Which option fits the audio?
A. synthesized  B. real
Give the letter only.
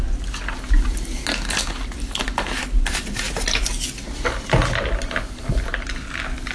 B